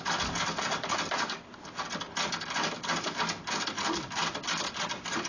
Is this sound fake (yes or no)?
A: no